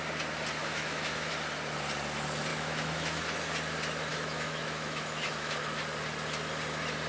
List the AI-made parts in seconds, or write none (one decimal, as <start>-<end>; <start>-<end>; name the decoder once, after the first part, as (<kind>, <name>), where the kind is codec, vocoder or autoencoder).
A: 0.6-1.3 (autoencoder, DAC-VAE); 2.5-3.2; 4.1-5.8